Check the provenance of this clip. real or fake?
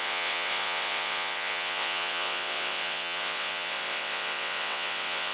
fake